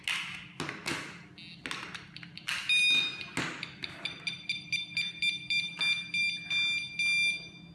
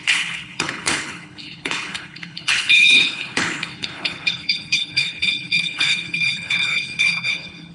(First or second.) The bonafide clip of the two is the first